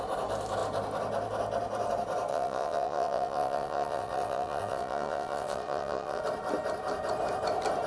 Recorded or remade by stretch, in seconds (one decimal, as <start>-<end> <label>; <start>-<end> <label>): 0.0-2.3 recorded; 2.3-6.2 remade; 6.2-7.9 recorded

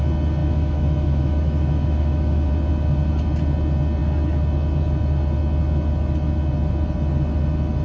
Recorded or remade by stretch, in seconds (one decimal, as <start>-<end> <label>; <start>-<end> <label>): 0.0-0.4 recorded; 0.4-2.5 remade; 2.5-7.8 recorded

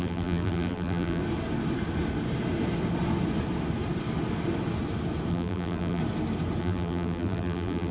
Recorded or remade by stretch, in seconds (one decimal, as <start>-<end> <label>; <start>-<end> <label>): 0.0-1.2 remade; 1.2-5.3 recorded; 5.3-6.0 remade; 6.0-6.6 recorded; 6.6-7.9 remade

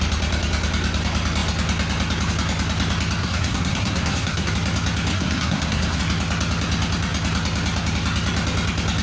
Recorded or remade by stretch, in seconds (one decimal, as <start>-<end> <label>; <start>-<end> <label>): 0.0-3.2 recorded; 3.2-4.5 remade; 4.5-5.1 recorded; 5.1-6.0 remade; 6.0-9.0 recorded

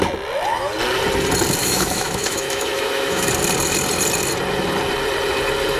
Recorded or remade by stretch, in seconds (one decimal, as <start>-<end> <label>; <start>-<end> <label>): 0.0-1.6 recorded; 1.6-3.3 remade; 3.3-5.8 recorded

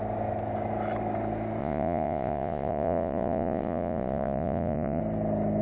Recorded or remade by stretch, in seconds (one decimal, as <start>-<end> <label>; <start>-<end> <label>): 0.0-1.6 recorded; 1.6-5.0 remade; 5.0-5.6 recorded